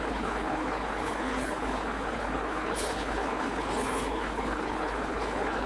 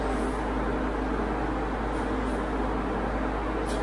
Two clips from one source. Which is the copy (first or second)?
first